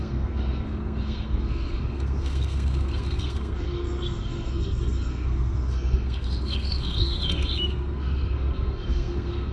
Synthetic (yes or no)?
yes